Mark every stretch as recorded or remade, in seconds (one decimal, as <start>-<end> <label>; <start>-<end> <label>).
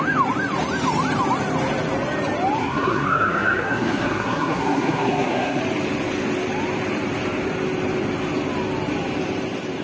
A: 0.0-2.6 recorded; 2.6-5.6 remade; 5.6-9.8 recorded